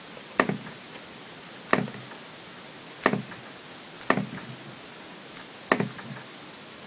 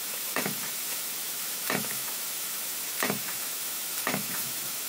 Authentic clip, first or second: first